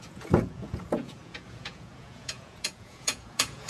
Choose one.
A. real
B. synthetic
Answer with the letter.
B